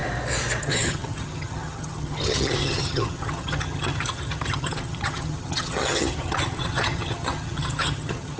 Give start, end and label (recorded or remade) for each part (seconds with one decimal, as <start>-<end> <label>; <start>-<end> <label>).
0.0-0.6 recorded; 0.6-8.4 remade